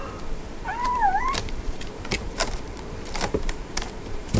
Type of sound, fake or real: fake